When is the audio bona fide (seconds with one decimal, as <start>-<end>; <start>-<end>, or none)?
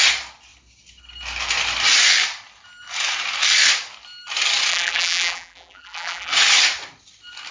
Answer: 0.0-4.7; 6.3-7.5